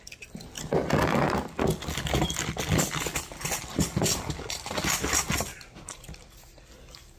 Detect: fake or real real